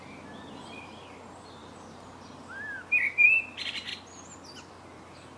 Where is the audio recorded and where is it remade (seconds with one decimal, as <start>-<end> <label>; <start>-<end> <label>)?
0.0-3.9 remade; 3.9-4.7 recorded; 4.7-5.4 remade